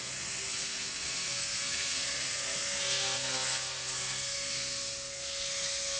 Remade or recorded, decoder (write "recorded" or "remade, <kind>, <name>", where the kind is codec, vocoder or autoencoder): remade, codec, SNAC